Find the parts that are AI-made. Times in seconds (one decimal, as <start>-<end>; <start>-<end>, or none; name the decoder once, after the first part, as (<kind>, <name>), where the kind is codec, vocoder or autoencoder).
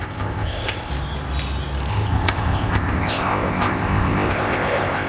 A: 0.0-0.9 (codec, ZipCodec); 1.9-5.1